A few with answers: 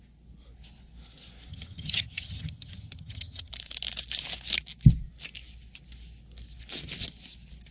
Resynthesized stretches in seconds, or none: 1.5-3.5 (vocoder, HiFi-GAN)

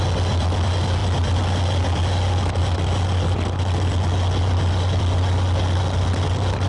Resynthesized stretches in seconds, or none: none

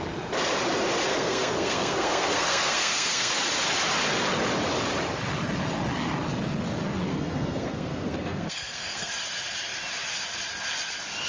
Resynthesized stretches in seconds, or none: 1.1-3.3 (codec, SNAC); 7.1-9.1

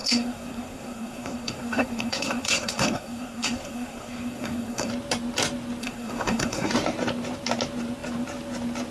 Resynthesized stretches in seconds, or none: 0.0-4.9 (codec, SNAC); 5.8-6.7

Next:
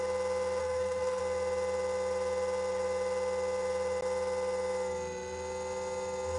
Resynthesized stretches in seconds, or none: 0.6-1.2 (codec, SNAC)